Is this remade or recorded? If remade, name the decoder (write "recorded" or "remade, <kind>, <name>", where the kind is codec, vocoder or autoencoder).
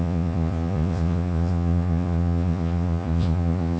remade, vocoder, Vocos